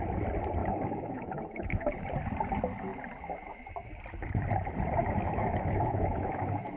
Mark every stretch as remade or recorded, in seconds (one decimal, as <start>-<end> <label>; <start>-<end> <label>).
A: 0.0-0.6 recorded; 0.6-1.9 remade; 1.9-5.0 recorded; 5.0-6.8 remade